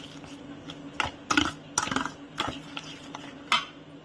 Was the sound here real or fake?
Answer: real